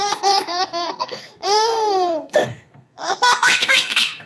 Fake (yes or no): yes